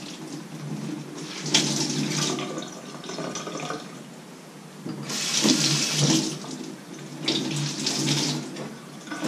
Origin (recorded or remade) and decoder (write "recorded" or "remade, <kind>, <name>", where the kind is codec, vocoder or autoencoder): recorded